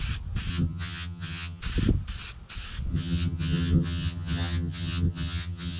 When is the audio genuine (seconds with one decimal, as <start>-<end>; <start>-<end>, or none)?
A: 0.0-0.5; 1.6-2.9